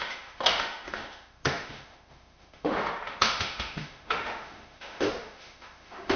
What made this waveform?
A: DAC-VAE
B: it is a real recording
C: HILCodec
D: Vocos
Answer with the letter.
A